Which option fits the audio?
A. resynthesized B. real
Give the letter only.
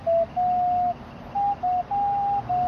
B